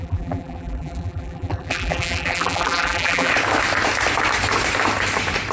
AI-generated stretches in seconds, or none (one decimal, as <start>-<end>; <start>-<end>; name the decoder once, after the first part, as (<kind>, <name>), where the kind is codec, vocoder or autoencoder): 0.0-3.3 (vocoder, BigVGAN v2)